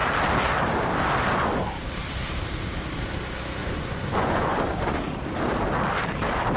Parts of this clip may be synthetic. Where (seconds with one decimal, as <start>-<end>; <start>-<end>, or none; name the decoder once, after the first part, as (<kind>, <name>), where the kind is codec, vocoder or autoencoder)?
3.6-5.0 (vocoder, Vocos)